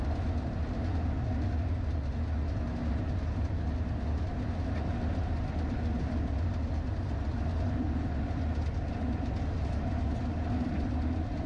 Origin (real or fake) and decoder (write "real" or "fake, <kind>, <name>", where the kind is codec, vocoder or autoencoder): real